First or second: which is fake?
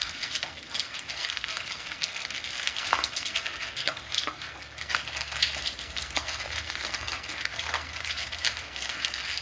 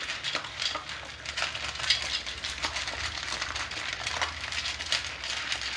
first